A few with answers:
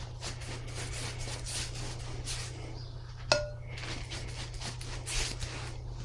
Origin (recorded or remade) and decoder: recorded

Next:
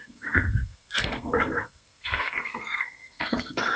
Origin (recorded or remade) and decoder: remade, codec, SNAC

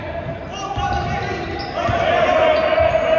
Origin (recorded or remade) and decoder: recorded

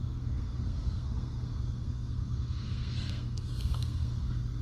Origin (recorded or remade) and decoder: remade, codec, SNAC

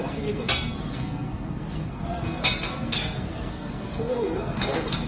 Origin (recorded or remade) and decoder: remade, codec, SNAC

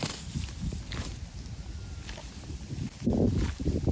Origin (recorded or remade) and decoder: recorded